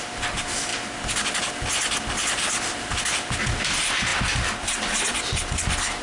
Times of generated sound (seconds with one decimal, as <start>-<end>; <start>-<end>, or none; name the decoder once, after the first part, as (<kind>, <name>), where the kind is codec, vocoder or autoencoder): none

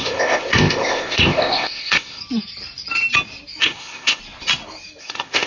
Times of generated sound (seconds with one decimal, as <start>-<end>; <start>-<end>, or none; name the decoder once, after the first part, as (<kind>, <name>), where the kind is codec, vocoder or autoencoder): 0.0-2.2 (codec, ZipCodec); 3.6-4.2; 5.0-5.5

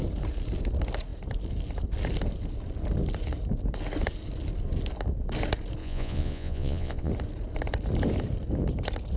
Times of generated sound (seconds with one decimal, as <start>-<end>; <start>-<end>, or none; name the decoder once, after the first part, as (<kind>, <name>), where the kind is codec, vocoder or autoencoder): 5.8-7.1 (vocoder, Vocos)

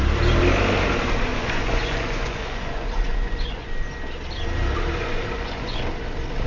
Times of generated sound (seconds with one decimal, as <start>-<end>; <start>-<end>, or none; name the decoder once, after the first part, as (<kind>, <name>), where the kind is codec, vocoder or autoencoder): 1.3-3.7 (vocoder, Vocos); 5.0-5.8